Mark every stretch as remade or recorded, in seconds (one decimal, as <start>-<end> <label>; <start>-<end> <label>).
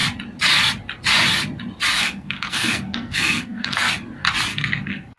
0.0-1.9 recorded; 1.9-3.9 remade; 3.9-4.5 recorded; 4.5-5.2 remade